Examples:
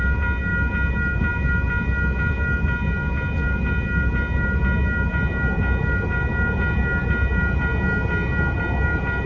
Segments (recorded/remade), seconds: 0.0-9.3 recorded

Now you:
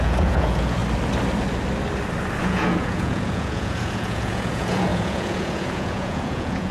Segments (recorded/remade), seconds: 0.0-0.8 remade; 0.8-2.4 recorded; 2.4-6.7 remade